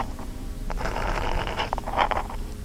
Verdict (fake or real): fake